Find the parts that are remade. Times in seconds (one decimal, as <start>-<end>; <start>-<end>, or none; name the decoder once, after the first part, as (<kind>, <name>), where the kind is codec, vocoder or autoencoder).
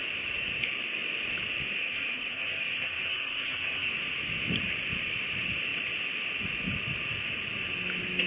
1.8-3.9 (codec, SNAC)